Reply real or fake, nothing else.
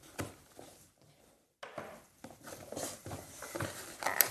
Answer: real